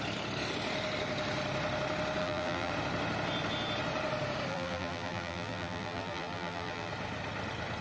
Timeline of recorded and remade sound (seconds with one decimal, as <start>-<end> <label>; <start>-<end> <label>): 0.0-2.2 recorded; 2.2-2.7 remade; 2.7-4.5 recorded; 4.5-6.9 remade; 6.9-7.8 recorded